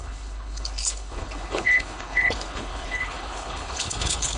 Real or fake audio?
fake